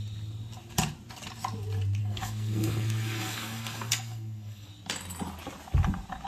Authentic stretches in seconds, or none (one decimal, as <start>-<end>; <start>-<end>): 0.0-2.0; 4.7-6.3